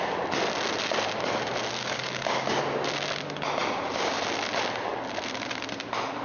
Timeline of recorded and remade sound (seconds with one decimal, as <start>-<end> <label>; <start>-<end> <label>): 0.0-1.8 recorded; 1.8-2.6 remade; 2.6-6.2 recorded